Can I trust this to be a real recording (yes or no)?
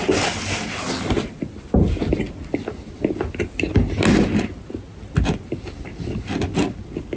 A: yes